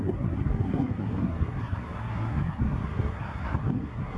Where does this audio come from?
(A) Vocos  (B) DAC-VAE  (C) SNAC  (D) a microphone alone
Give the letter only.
C